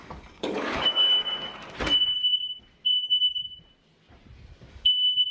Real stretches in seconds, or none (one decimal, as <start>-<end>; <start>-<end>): 1.5-4.7